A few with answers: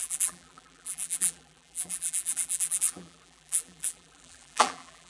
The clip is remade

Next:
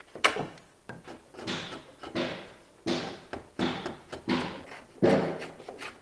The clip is recorded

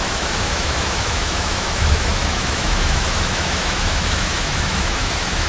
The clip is remade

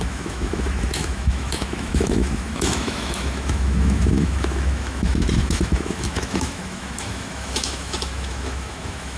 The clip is remade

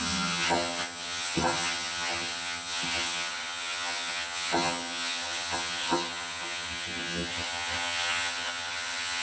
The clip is remade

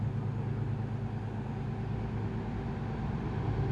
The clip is recorded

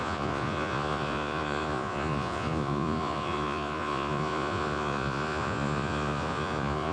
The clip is remade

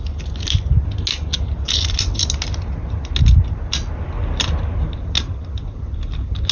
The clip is recorded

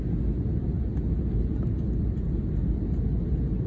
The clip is recorded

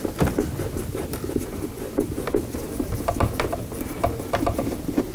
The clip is recorded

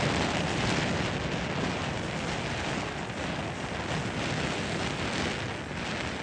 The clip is recorded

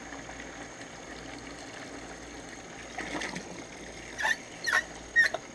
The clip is recorded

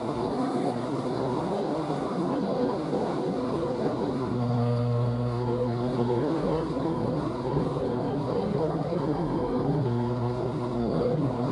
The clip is remade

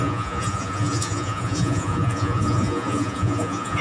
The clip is remade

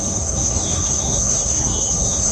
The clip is remade